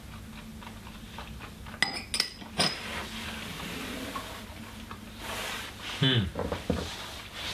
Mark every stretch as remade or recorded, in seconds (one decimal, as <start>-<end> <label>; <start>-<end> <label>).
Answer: 0.0-7.5 recorded